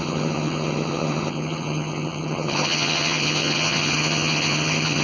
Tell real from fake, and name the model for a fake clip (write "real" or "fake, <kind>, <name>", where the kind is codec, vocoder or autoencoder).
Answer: fake, vocoder, HiFi-GAN